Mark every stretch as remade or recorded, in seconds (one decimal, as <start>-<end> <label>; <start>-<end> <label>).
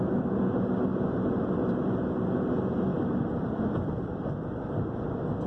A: 0.0-0.9 recorded; 0.9-1.7 remade; 1.7-2.9 recorded; 2.9-4.7 remade; 4.7-5.5 recorded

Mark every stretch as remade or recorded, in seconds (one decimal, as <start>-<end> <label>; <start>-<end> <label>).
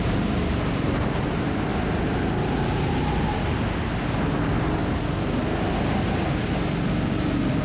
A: 0.0-7.6 recorded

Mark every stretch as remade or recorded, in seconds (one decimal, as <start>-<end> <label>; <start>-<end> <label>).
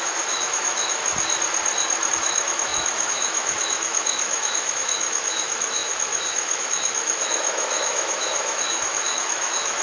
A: 0.0-1.0 remade; 1.0-2.1 recorded; 2.1-9.8 remade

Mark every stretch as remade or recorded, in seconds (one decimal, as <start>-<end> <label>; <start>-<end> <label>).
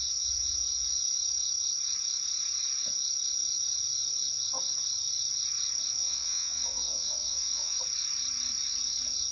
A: 0.0-6.0 recorded; 6.0-7.8 remade; 7.8-9.3 recorded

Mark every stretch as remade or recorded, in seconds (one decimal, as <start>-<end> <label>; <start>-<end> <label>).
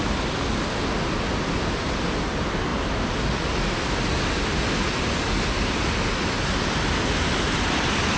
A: 0.0-8.2 recorded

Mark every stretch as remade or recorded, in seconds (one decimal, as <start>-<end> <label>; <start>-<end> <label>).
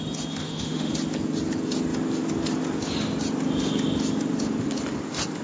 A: 0.0-0.4 recorded; 0.4-0.9 remade; 0.9-5.4 recorded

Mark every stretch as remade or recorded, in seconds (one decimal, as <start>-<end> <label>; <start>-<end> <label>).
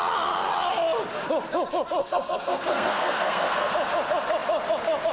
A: 0.0-2.0 recorded; 2.0-3.7 remade; 3.7-5.1 recorded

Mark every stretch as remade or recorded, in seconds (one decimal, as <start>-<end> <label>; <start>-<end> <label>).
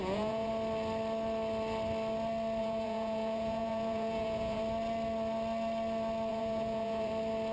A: 0.0-0.5 remade; 0.5-2.6 recorded; 2.6-4.6 remade; 4.6-6.3 recorded; 6.3-7.1 remade; 7.1-7.5 recorded